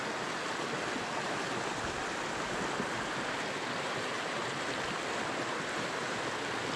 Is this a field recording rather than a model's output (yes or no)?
yes